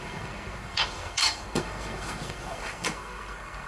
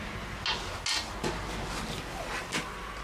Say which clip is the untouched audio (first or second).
second